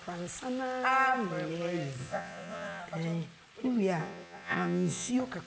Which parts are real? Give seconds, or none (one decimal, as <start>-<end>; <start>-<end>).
0.0-2.0; 2.8-4.0; 5.1-5.5